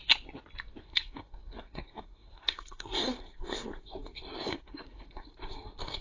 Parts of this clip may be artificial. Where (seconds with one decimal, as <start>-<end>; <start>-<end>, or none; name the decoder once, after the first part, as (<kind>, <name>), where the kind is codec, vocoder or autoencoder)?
0.8-6.0 (codec, SNAC)